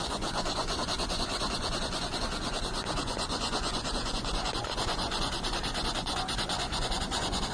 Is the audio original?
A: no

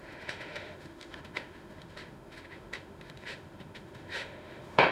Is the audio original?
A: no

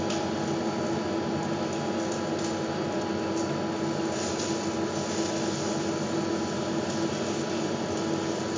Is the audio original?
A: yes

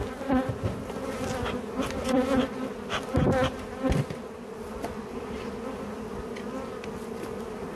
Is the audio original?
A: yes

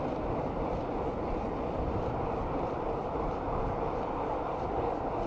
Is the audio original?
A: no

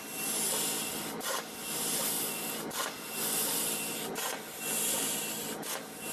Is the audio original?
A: yes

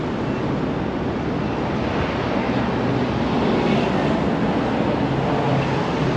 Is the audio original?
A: yes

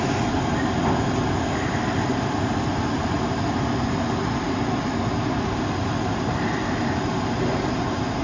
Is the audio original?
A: yes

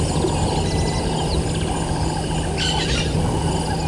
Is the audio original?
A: yes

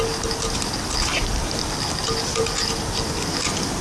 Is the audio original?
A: yes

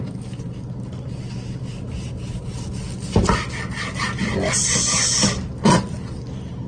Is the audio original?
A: yes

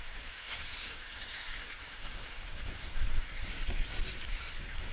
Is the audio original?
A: no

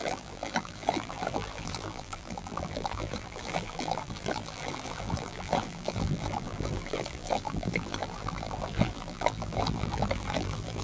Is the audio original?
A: no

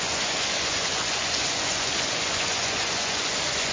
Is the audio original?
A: no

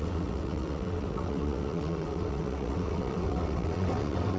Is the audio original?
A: no